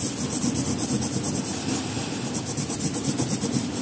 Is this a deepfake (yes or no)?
no